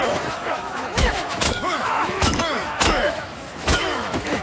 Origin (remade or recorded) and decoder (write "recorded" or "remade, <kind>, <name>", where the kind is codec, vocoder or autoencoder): remade, autoencoder, DAC-VAE